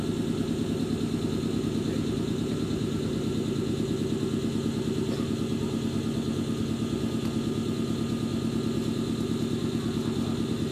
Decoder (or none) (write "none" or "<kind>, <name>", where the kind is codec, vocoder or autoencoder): none